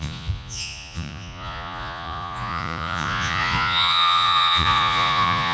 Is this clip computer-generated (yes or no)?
yes